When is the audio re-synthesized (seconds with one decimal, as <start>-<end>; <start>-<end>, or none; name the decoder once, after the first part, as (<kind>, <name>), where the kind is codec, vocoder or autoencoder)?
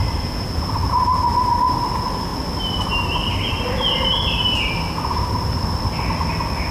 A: none